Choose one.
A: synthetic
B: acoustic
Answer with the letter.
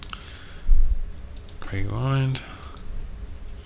B